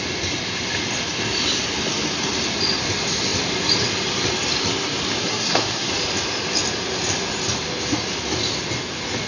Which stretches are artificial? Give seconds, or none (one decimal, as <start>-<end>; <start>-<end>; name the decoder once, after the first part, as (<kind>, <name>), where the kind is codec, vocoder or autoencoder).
5.2-5.9 (codec, SNAC)